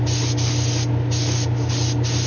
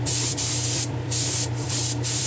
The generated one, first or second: second